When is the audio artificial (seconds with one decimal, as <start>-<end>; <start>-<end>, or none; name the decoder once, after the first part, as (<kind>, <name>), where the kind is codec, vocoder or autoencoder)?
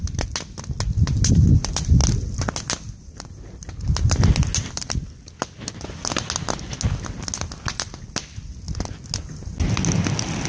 none